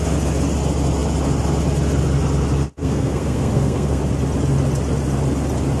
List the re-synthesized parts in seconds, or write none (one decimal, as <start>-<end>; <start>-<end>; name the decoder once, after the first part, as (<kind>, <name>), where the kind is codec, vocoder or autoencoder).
2.8-4.0 (codec, SNAC)